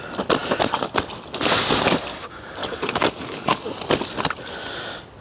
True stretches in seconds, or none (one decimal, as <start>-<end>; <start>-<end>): 0.0-2.6; 3.8-5.2